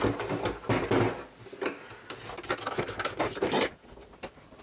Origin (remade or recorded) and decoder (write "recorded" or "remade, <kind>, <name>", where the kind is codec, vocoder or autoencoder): recorded